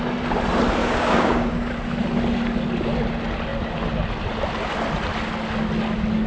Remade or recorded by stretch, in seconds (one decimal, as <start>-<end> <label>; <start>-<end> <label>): 0.0-0.8 recorded; 0.8-1.7 remade; 1.7-6.3 recorded